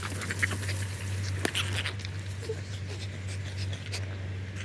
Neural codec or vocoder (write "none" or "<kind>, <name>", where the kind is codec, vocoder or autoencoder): none